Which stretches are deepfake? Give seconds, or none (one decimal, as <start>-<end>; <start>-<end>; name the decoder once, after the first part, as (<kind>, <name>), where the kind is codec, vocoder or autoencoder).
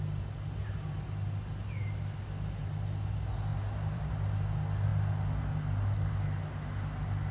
3.5-4.1 (vocoder, BigVGAN v2)